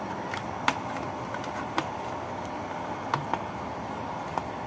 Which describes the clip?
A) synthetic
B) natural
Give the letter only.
B